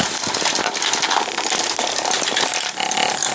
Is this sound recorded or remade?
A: recorded